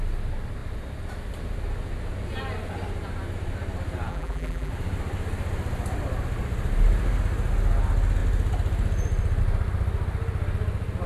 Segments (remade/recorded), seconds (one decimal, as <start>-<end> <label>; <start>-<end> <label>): 0.0-4.1 recorded; 4.1-4.7 remade; 4.7-11.1 recorded